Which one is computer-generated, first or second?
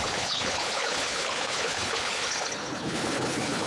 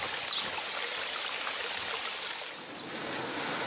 first